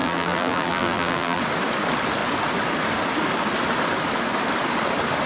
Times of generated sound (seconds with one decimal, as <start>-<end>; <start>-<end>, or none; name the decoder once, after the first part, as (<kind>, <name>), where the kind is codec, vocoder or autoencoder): 0.0-1.4 (vocoder, BigVGAN v2)